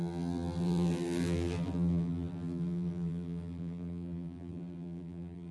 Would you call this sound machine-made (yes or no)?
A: yes